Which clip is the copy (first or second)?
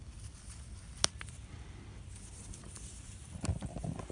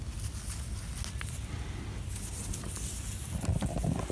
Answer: first